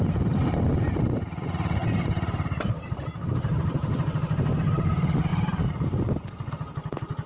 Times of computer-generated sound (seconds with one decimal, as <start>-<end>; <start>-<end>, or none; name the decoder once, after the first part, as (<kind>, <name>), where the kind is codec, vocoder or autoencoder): 1.8-4.6 (vocoder, BigVGAN v2)